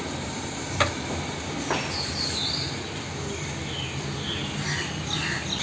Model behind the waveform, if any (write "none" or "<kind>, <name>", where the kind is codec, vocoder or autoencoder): none